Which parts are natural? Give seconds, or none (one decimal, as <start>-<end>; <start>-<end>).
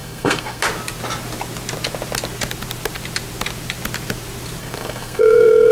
0.6-4.6